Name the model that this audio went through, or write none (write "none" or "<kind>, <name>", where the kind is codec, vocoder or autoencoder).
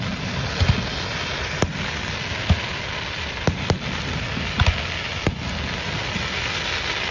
none